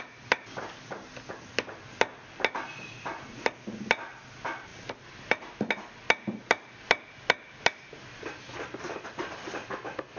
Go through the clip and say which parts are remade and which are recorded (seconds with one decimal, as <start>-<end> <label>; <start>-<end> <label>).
0.0-10.2 recorded